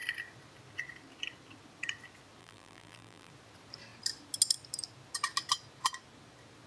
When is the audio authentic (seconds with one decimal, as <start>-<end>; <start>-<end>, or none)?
0.0-2.4; 3.3-6.7